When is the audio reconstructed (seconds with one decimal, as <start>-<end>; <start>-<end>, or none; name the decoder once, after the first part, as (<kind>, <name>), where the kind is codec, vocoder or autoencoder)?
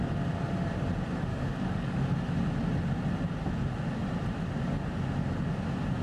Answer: 1.3-2.1 (codec, DAC)